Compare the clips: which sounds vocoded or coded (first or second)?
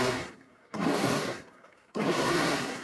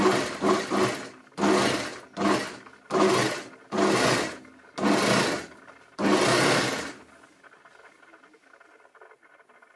first